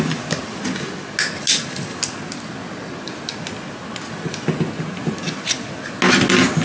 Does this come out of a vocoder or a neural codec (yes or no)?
no